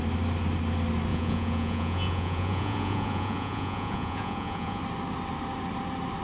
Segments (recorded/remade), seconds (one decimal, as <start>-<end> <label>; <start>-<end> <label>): 0.0-1.1 recorded; 1.1-4.8 remade; 4.8-6.2 recorded